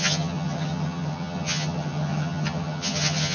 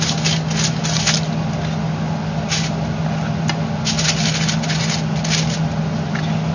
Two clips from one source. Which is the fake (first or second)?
first